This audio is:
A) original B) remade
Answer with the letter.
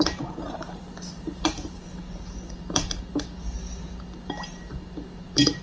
A